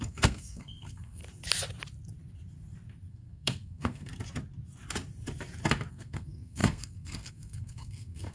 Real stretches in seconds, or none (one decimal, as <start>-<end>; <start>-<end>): 1.2-3.1; 4.1-5.9

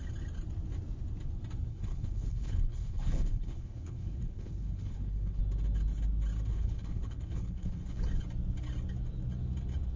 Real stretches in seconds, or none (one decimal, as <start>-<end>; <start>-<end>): 0.0-1.7; 5.4-6.5; 8.0-10.0